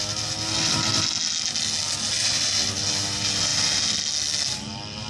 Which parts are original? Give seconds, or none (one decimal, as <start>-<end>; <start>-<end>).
0.0-5.1